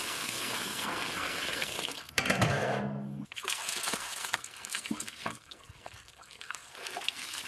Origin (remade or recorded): remade